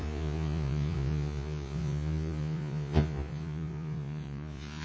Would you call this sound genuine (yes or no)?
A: no